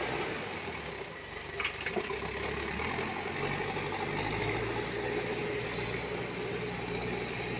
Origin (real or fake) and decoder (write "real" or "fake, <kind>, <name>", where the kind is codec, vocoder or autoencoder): real